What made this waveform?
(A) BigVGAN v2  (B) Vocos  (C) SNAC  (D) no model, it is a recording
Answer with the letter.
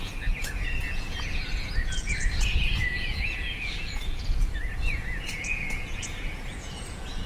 B